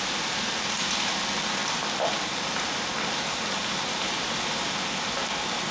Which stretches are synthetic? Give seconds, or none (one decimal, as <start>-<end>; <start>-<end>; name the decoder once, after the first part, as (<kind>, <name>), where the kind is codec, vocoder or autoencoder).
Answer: none